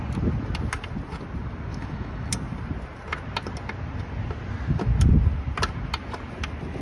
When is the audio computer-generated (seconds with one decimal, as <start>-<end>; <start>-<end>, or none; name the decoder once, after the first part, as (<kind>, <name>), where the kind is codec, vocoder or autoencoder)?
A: 1.7-2.3 (autoencoder, DAC-VAE)